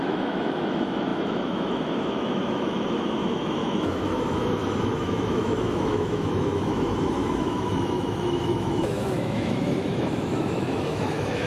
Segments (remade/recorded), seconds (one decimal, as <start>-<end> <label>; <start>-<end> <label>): 0.0-11.5 remade